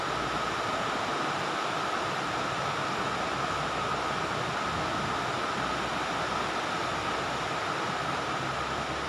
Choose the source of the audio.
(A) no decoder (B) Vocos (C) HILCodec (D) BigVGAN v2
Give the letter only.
A